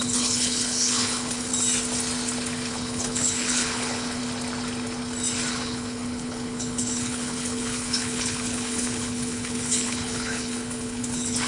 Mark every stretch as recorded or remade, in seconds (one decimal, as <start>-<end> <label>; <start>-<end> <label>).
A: 0.0-1.5 remade; 1.5-2.7 recorded; 2.7-4.2 remade; 4.2-5.5 recorded; 5.5-11.5 remade